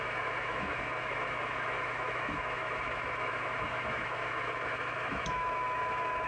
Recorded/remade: remade